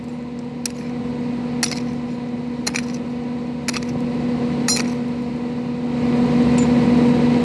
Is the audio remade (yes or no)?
no